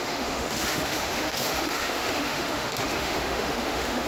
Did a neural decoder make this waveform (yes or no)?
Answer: yes